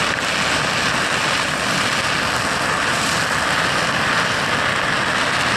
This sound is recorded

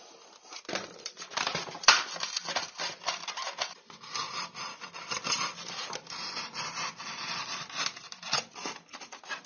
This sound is remade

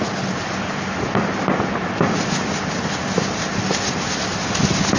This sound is recorded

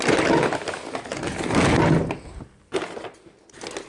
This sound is recorded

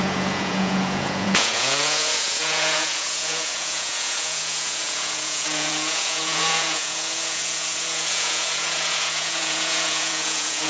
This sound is remade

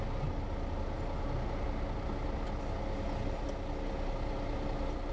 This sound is recorded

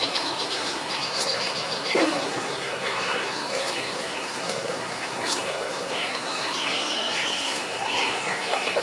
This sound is remade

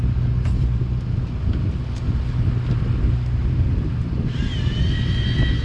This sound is recorded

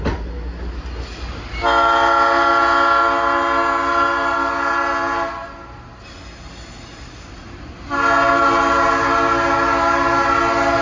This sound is recorded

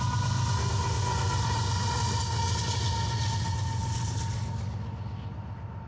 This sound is recorded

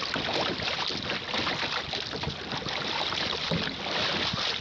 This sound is recorded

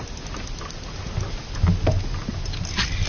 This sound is recorded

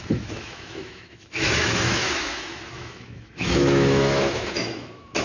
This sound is remade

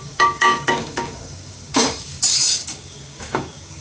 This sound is remade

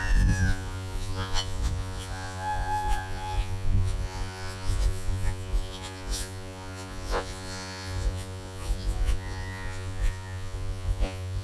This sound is remade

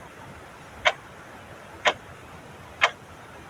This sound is recorded